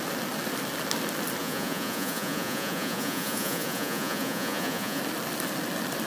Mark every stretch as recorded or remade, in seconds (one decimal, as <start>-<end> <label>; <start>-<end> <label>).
0.0-1.4 recorded; 1.4-5.0 remade; 5.0-6.1 recorded